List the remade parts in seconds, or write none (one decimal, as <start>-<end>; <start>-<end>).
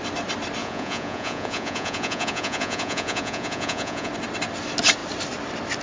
0.6-4.1